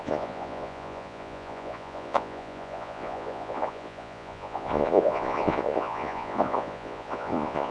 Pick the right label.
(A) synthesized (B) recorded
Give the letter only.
A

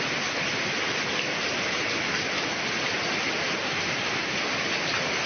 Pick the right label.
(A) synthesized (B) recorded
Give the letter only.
B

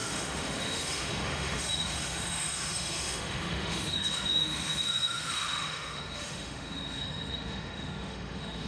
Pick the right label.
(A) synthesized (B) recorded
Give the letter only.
A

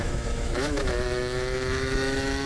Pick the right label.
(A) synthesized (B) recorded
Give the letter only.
A